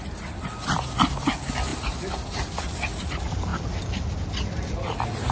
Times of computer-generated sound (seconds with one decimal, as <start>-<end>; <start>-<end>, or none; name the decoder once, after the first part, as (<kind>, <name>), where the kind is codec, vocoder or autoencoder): none